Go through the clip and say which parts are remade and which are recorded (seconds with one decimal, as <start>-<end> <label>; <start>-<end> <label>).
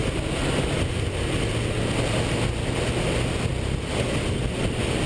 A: 0.0-5.1 recorded